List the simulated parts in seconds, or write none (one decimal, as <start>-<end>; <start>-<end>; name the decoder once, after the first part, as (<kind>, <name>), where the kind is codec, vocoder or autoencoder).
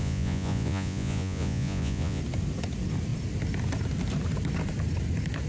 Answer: 0.0-2.2 (vocoder, Vocos)